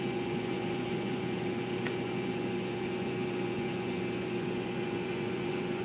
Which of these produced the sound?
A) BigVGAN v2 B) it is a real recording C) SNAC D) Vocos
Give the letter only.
D